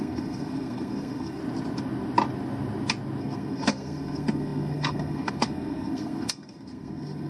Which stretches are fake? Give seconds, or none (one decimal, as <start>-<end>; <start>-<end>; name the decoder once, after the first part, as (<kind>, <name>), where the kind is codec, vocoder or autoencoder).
0.0-1.4 (codec, SNAC); 3.2-7.3